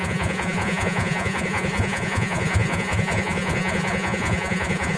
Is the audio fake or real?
fake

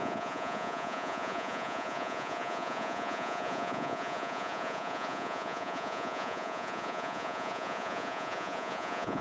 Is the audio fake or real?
fake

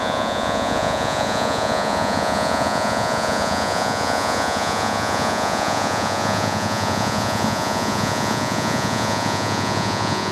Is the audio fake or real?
fake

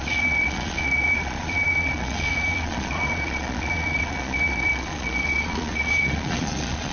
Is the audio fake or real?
fake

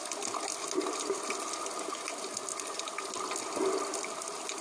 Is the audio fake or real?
real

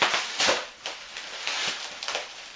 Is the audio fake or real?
real